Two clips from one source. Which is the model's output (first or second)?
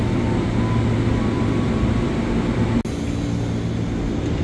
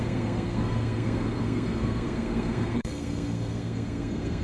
second